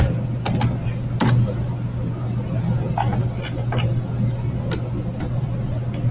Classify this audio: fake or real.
real